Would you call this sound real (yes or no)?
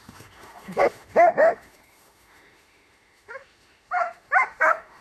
no